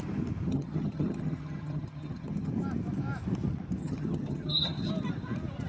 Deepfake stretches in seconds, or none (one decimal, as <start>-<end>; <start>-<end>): 0.5-2.5; 3.8-4.9